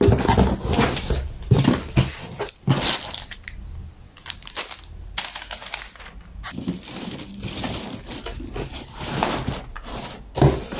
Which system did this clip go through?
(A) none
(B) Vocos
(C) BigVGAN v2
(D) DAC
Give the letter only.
A